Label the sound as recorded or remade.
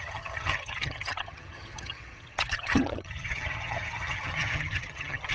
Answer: remade